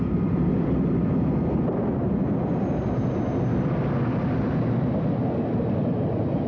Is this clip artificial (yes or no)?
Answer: no